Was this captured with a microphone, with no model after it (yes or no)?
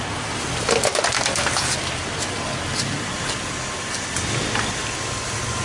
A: yes